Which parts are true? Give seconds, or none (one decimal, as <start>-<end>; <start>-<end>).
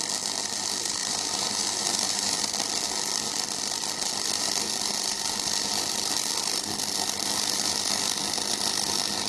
0.0-1.0; 2.4-9.3